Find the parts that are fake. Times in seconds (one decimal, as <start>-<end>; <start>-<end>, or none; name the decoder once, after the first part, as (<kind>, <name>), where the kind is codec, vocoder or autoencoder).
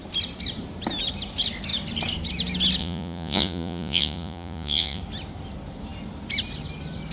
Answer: 2.8-5.0 (vocoder, Vocos)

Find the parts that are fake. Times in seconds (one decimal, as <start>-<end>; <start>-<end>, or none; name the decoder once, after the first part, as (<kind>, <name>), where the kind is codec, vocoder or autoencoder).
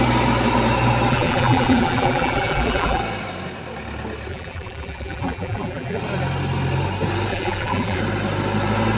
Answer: 1.1-3.0 (vocoder, BigVGAN v2); 4.3-6.0; 7.3-8.0